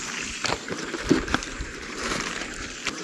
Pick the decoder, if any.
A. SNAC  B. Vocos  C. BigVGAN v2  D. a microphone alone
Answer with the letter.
C